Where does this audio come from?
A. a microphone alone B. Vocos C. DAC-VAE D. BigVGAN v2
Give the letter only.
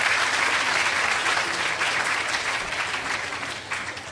A